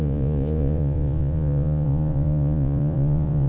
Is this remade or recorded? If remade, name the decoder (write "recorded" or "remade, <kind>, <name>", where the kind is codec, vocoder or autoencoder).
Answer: remade, vocoder, Vocos